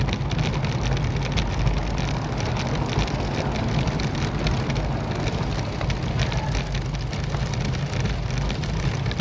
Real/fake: real